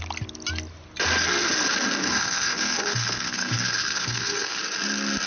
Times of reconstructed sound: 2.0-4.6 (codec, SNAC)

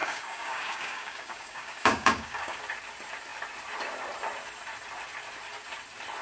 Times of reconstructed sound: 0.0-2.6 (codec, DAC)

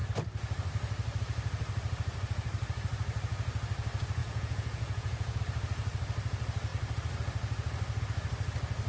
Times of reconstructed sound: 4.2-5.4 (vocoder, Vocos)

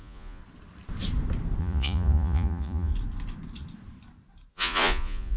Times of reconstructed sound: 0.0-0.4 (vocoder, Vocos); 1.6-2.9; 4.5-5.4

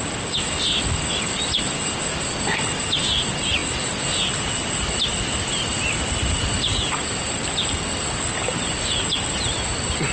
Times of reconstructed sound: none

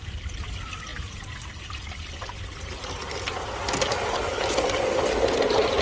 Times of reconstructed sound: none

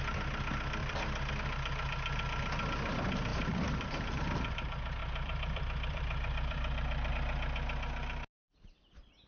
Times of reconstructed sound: 0.8-1.3 (vocoder, BigVGAN v2); 3.3-4.2; 5.0-7.1